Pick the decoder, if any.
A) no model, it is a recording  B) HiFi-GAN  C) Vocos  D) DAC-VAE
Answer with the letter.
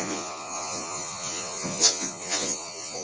C